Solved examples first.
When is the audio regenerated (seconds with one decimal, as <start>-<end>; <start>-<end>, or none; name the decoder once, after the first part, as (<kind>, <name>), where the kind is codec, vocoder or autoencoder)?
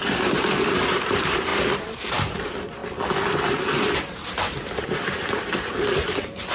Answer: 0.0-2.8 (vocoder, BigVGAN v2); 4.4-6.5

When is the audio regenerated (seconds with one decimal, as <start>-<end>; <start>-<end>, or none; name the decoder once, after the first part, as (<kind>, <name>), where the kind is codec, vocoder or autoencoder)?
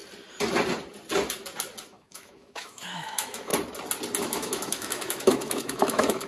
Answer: 1.9-3.5 (autoencoder, DAC-VAE); 4.2-6.3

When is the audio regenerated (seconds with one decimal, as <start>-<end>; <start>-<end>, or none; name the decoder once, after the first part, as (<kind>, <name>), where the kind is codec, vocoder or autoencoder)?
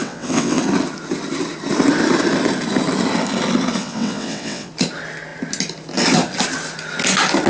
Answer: 0.0-0.6 (vocoder, WaveNeXt); 3.8-4.7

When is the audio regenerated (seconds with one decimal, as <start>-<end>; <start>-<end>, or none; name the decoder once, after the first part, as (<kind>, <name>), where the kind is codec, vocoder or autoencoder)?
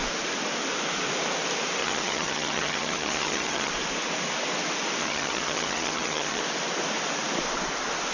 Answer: 1.8-3.7 (vocoder, HiFi-GAN); 5.0-6.4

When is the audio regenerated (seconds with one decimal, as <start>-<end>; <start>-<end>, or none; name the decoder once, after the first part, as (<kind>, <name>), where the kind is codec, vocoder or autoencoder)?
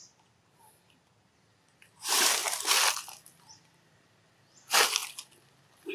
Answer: none